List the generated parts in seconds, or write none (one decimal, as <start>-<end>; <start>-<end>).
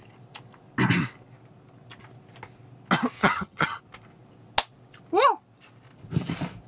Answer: 3.2-3.8